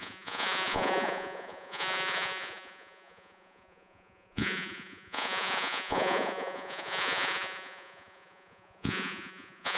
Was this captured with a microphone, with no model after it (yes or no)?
no